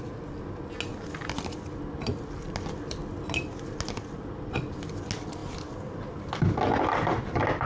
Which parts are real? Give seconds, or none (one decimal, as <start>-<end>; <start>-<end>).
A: 0.0-7.7